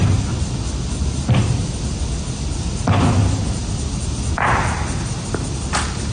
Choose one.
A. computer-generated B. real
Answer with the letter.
B